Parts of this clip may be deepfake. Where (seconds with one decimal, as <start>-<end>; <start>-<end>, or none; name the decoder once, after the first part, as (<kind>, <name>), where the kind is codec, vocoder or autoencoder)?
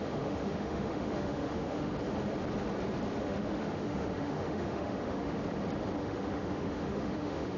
0.0-1.9 (autoencoder, DAC-VAE); 3.2-5.4; 6.0-7.6